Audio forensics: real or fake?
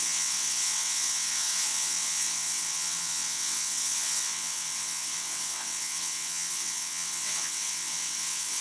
fake